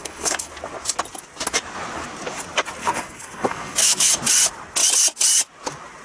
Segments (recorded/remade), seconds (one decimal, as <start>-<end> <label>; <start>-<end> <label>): 0.0-0.5 remade; 0.5-2.8 recorded; 2.8-4.1 remade; 4.1-6.0 recorded